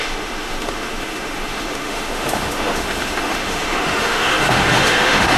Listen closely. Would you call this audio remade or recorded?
remade